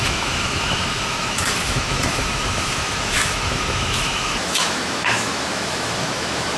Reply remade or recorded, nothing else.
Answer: remade